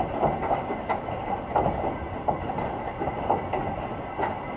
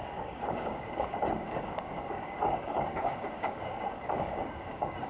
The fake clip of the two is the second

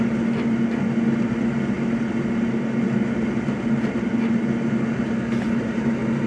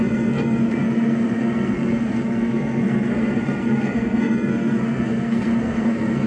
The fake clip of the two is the second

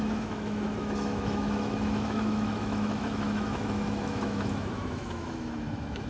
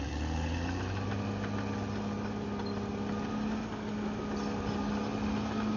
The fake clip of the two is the first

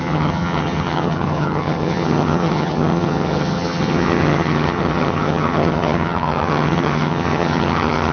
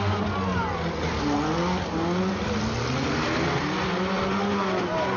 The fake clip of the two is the first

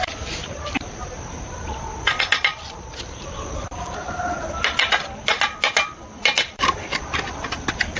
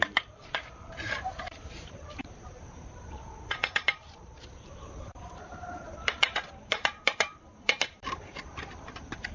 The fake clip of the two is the second